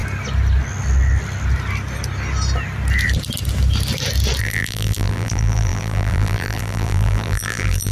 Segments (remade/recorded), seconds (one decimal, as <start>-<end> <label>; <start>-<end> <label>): 0.0-4.4 recorded; 4.4-7.9 remade